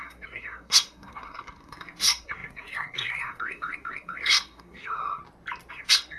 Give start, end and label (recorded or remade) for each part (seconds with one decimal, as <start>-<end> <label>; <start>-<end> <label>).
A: 0.0-5.2 remade; 5.2-5.7 recorded; 5.7-6.2 remade